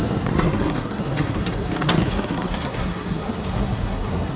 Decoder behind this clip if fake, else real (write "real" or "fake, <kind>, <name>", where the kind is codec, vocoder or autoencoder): fake, codec, SNAC